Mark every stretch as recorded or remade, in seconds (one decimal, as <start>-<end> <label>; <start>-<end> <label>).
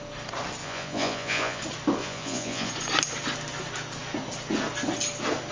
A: 0.0-0.6 recorded; 0.6-1.6 remade; 1.6-2.0 recorded; 2.0-2.7 remade; 2.7-5.5 recorded